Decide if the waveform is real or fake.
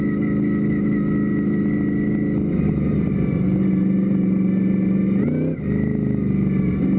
real